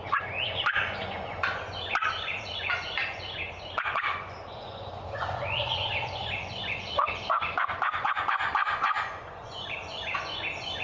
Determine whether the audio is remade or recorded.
remade